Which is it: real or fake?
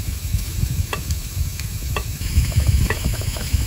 fake